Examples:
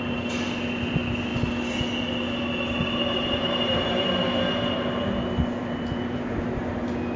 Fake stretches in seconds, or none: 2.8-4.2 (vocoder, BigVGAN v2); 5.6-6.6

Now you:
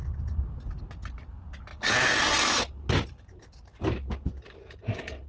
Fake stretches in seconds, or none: none